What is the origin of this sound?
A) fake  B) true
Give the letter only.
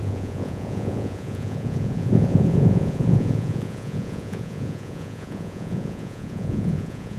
A